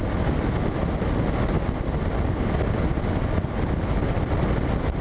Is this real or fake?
real